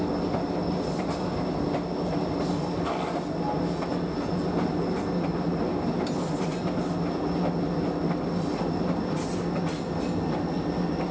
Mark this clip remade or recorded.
recorded